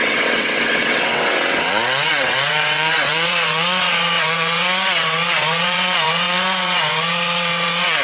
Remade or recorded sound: remade